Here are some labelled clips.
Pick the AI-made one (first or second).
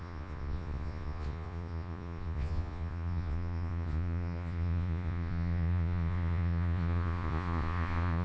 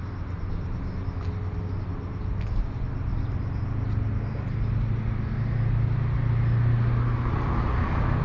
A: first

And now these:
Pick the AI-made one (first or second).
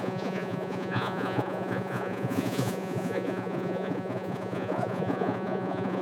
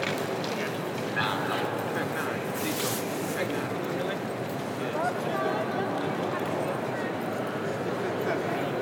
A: first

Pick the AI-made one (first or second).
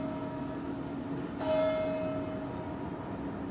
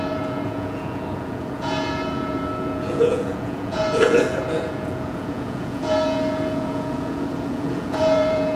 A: second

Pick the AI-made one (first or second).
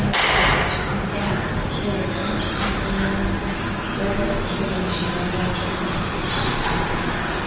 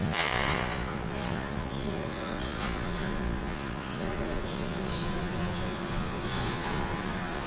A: second